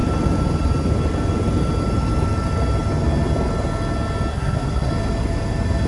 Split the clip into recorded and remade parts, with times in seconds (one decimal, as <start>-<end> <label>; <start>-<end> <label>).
0.0-4.3 recorded; 4.3-4.9 remade; 4.9-5.9 recorded